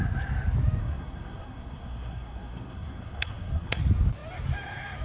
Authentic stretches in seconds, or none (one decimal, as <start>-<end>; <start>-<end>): 0.0-0.8; 3.8-5.0